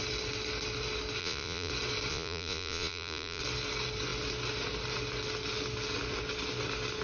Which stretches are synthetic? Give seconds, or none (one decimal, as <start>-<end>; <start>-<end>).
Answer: 1.2-1.7; 2.1-3.4

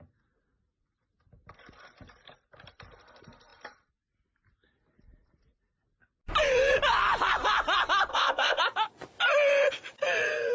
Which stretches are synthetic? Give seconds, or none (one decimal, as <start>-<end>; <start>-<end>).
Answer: 8.1-8.6